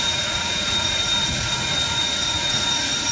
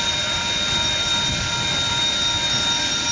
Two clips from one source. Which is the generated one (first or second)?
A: first